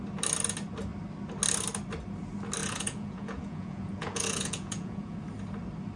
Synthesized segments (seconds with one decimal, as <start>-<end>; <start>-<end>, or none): 2.6-5.2